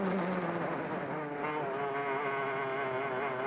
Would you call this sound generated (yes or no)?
no